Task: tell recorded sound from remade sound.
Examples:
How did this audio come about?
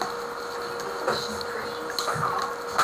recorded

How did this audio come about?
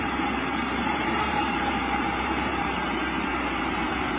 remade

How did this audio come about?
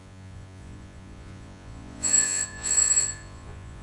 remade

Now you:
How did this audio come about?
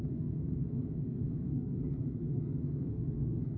remade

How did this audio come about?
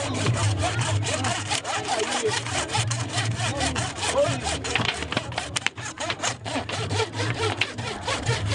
remade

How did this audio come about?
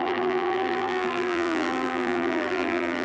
remade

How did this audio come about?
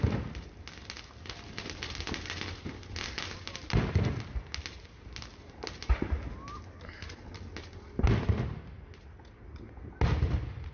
recorded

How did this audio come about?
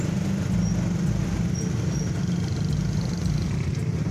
recorded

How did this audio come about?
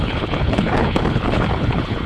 remade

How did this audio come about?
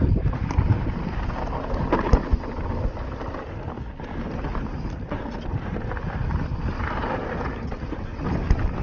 recorded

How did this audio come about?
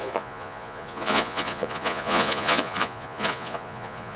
remade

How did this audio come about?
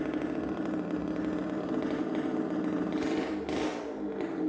recorded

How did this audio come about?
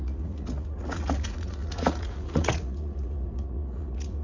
remade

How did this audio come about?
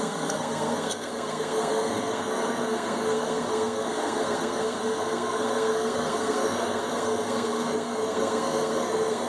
remade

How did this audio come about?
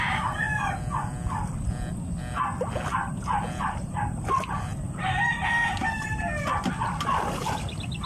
recorded